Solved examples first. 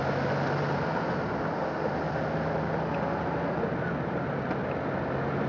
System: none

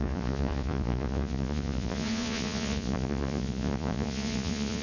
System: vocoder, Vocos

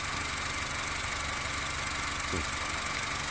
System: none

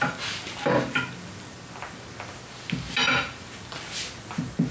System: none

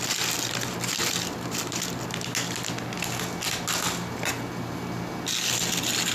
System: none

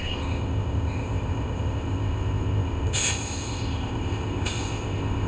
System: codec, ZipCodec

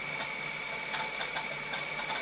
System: none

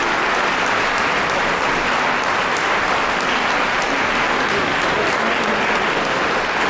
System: none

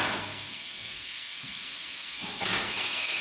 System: codec, SNAC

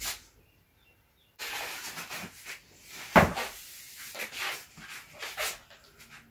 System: none